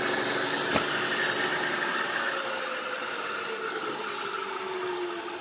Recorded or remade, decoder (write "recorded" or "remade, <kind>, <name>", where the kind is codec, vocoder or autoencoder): recorded